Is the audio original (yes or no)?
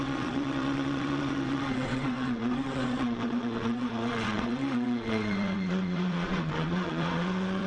no